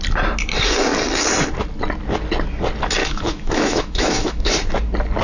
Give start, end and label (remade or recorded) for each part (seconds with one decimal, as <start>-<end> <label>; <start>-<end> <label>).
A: 0.0-3.0 recorded; 3.0-4.5 remade; 4.5-5.2 recorded